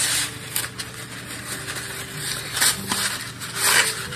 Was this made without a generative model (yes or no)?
yes